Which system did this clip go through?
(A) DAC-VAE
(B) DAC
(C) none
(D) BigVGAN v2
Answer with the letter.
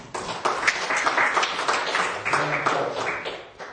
C